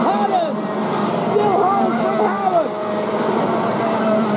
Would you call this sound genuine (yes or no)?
yes